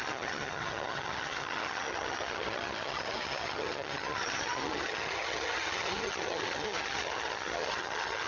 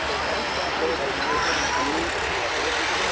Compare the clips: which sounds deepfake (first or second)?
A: first